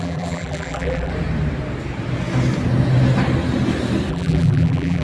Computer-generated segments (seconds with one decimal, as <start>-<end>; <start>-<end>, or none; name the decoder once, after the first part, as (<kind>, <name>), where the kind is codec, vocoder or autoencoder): 0.0-1.1 (vocoder, BigVGAN v2); 4.1-5.0